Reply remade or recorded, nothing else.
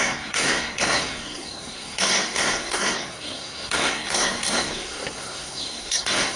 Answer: remade